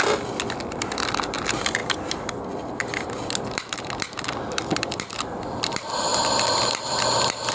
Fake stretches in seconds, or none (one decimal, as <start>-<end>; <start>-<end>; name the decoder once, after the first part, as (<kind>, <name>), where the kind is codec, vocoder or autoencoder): 0.0-7.5 (vocoder, BigVGAN v2)